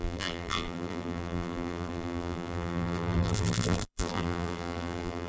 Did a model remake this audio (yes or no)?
yes